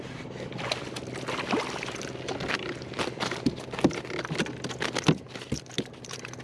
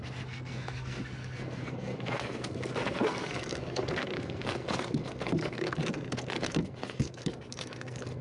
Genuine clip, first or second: first